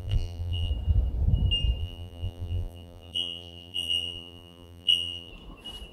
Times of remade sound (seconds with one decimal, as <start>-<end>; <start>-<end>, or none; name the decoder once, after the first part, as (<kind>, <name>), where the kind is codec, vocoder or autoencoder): 0.0-0.7 (vocoder, BigVGAN v2); 1.8-5.3